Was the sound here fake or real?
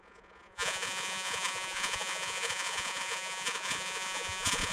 fake